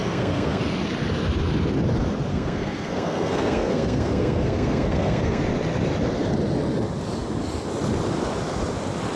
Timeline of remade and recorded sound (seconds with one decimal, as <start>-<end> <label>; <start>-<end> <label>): 0.0-0.6 remade; 0.6-2.3 recorded; 2.3-5.4 remade; 5.4-9.2 recorded